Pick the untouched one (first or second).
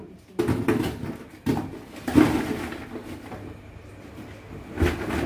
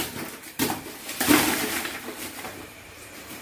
first